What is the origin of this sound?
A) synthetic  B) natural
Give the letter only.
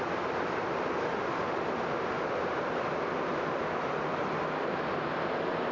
A